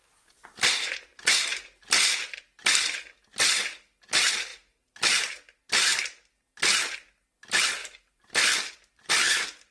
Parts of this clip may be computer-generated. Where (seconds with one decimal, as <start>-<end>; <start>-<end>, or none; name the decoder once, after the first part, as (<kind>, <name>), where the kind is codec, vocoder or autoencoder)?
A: 7.8-9.1 (vocoder, BigVGAN v2)